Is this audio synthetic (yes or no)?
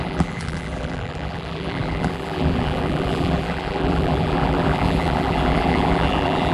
yes